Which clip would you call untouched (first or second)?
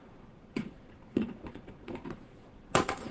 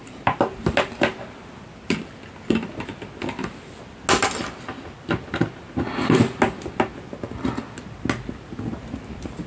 second